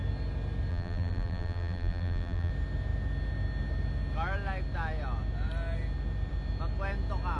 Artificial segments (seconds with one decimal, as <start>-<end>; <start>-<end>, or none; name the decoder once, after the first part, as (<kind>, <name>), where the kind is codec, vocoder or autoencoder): 0.7-2.5 (vocoder, BigVGAN v2)